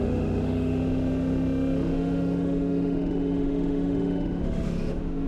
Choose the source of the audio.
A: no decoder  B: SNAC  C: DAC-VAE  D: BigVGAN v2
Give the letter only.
C